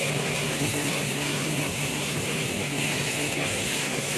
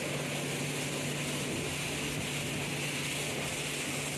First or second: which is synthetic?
first